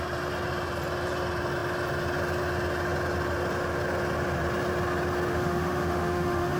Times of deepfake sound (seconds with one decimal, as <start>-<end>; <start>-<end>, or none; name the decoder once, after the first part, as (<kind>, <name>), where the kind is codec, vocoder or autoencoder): 5.3-6.6 (autoencoder, DAC-VAE)